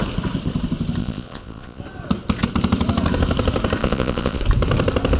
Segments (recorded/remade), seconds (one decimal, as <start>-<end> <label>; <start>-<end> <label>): 0.0-1.0 recorded; 1.0-1.8 remade; 1.8-3.8 recorded; 3.8-4.4 remade; 4.4-5.2 recorded